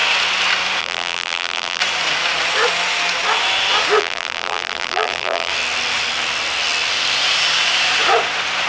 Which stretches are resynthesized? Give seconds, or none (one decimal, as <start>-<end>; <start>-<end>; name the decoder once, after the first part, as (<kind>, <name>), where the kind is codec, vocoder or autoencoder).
0.8-1.8 (vocoder, BigVGAN v2); 4.0-5.5